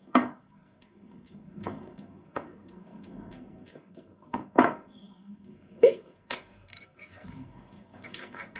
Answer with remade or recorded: remade